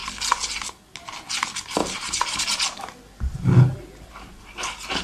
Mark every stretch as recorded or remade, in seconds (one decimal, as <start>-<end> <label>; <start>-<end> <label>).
0.0-1.8 recorded; 1.8-2.4 remade; 2.4-5.0 recorded